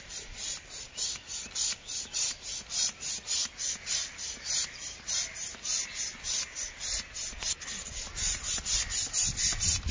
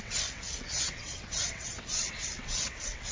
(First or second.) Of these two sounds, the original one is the first